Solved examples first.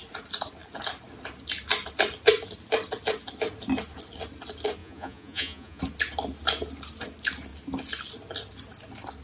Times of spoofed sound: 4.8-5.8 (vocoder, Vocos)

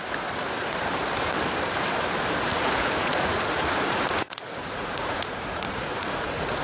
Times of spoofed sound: 2.5-6.6 (vocoder, Vocos)

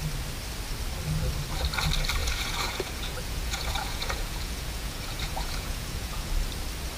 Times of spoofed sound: 2.2-6.3 (vocoder, Vocos)

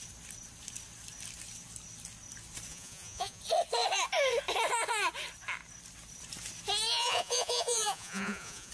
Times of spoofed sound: 2.7-3.4 (vocoder, Vocos); 6.9-8.7

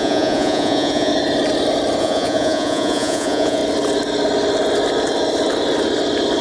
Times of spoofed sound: 0.0-1.1 (vocoder, Vocos); 2.0-3.6

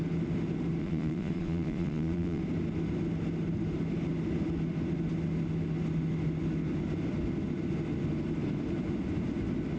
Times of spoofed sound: 0.8-2.4 (vocoder, Vocos)

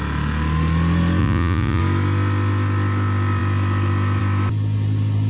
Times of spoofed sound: 1.2-1.8 (vocoder, Vocos)